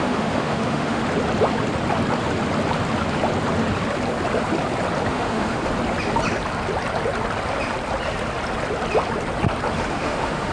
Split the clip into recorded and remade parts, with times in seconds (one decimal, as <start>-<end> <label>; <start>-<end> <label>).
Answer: 0.0-1.0 remade; 1.0-5.1 recorded; 5.1-5.7 remade; 5.7-9.9 recorded; 9.9-10.5 remade